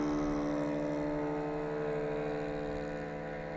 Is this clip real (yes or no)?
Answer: yes